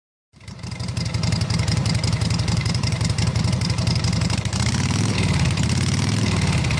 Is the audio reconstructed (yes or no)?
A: yes